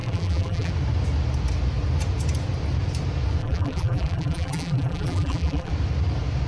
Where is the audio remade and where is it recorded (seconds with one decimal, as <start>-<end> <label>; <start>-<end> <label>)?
0.0-0.7 remade; 0.7-3.4 recorded; 3.4-5.7 remade; 5.7-6.5 recorded